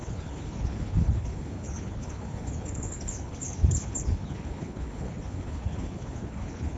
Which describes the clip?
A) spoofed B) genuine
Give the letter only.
A